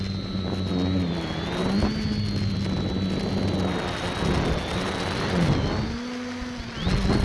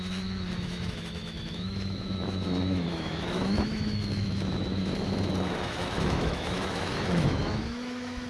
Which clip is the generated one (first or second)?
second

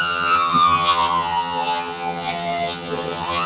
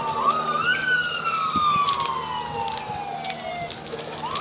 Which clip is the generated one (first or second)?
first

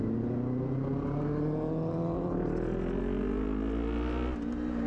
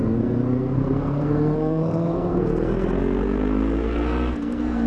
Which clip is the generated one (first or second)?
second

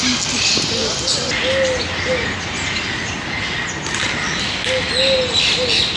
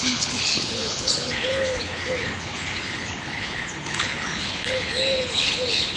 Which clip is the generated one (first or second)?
second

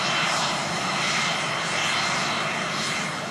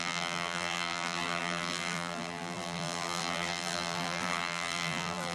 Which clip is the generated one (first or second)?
second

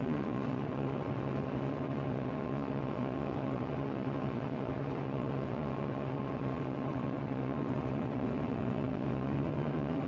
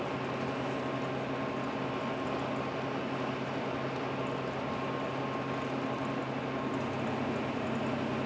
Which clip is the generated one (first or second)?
first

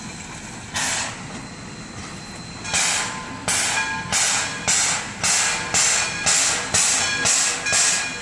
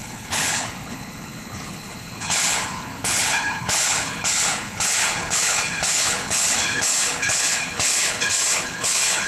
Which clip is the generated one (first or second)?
second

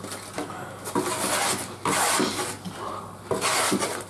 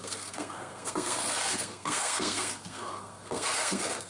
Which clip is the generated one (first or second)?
second